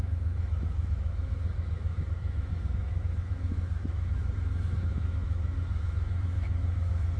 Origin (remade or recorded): remade